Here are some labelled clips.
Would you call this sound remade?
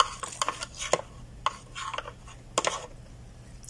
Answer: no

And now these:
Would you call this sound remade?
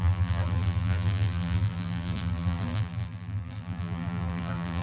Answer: yes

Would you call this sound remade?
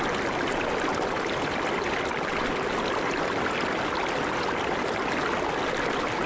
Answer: no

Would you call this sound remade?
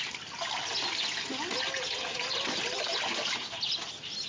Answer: no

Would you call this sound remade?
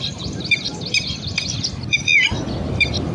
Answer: no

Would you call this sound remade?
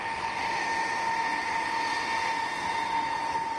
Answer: no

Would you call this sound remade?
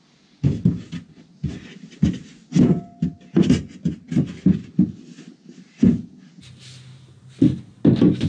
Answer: no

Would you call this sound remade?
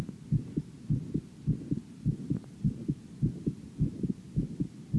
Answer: no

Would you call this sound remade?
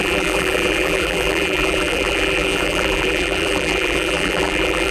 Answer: yes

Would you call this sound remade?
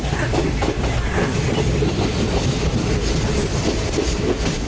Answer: no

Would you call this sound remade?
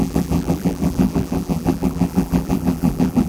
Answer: yes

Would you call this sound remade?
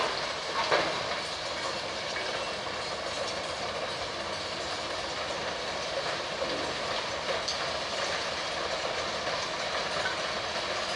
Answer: no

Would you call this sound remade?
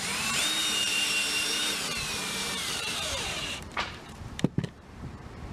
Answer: yes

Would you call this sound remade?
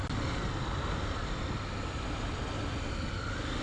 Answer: no